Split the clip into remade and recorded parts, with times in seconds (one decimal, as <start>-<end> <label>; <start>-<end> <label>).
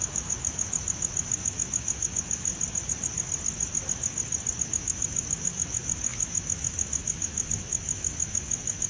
0.0-2.5 remade; 2.5-4.6 recorded; 4.6-8.9 remade